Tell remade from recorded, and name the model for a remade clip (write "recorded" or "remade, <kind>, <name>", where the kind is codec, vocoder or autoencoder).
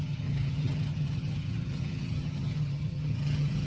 remade, vocoder, HiFi-GAN